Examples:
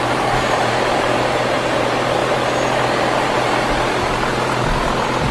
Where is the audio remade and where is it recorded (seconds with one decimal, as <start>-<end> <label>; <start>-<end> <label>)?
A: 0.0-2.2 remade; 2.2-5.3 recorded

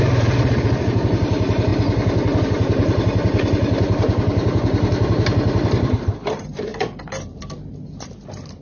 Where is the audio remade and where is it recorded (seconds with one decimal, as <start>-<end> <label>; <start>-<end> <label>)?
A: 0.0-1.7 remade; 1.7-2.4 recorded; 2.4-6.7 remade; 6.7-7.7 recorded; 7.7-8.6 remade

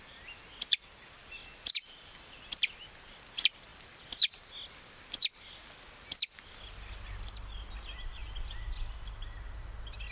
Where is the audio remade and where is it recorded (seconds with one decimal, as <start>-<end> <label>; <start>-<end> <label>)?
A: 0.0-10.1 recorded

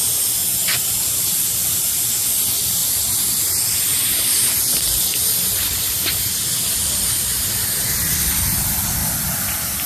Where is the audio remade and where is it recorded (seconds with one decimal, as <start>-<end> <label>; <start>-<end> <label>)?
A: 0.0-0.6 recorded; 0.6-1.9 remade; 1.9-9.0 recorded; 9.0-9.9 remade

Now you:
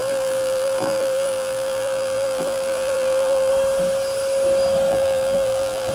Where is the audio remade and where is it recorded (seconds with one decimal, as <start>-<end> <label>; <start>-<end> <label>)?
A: 0.0-3.5 remade; 3.5-4.9 recorded; 4.9-5.9 remade

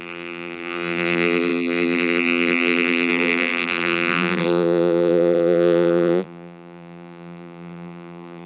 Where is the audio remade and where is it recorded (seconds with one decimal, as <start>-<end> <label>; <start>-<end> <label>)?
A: 0.0-8.5 remade